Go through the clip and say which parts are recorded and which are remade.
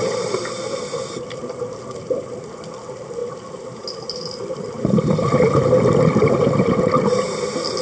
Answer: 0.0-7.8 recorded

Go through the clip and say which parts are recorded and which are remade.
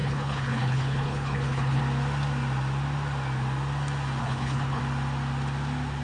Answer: 0.0-1.8 remade; 1.8-4.2 recorded; 4.2-4.8 remade; 4.8-6.0 recorded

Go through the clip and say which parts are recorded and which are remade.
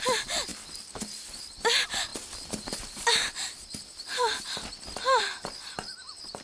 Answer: 0.0-2.1 recorded; 2.1-5.2 remade; 5.2-6.4 recorded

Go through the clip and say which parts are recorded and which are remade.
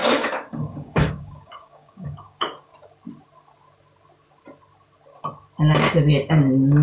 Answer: 0.0-2.7 remade; 2.7-6.3 recorded; 6.3-6.8 remade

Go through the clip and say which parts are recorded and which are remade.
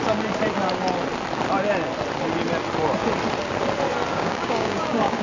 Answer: 0.0-4.1 recorded; 4.1-5.2 remade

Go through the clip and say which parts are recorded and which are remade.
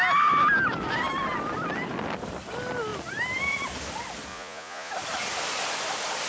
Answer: 0.0-4.3 recorded; 4.3-4.9 remade; 4.9-6.3 recorded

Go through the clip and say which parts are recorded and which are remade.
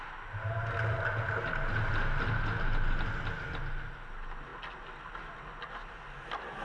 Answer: 0.0-6.6 recorded